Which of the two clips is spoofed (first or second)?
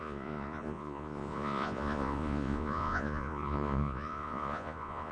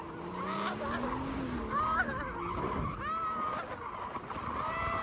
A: first